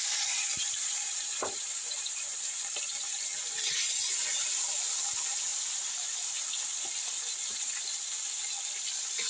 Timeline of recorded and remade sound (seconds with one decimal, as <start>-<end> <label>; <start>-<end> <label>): 0.0-0.8 recorded; 0.8-2.5 remade; 2.5-4.3 recorded; 4.3-4.8 remade; 4.8-5.5 recorded; 5.5-6.3 remade; 6.3-9.3 recorded